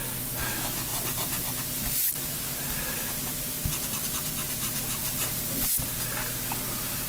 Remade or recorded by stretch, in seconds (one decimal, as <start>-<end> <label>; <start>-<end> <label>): 0.0-0.9 recorded; 0.9-1.5 remade; 1.5-5.0 recorded; 5.0-5.6 remade; 5.6-7.1 recorded